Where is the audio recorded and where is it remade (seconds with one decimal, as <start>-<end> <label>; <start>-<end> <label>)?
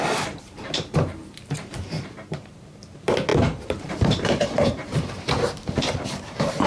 0.0-6.7 remade